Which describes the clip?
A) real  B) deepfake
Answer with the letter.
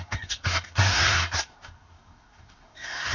B